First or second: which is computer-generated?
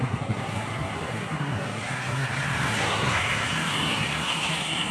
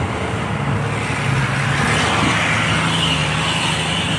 first